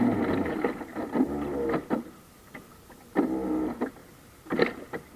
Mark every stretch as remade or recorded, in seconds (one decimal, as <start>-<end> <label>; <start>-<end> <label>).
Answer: 0.0-1.8 recorded; 1.8-2.3 remade; 2.3-4.0 recorded; 4.0-5.2 remade